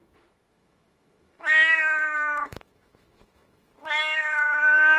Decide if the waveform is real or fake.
fake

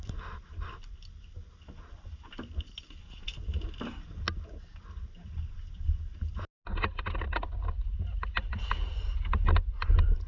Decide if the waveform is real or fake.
real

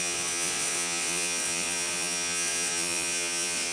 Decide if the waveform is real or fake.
fake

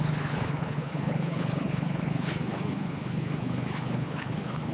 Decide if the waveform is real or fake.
fake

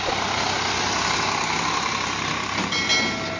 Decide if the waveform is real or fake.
real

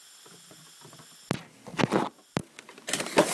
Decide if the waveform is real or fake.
real